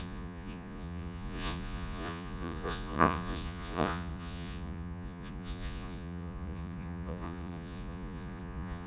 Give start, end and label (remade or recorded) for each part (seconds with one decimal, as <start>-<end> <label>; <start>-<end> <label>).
0.0-8.9 remade